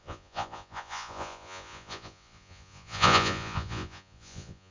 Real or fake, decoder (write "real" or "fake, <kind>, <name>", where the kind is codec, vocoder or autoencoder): fake, vocoder, Vocos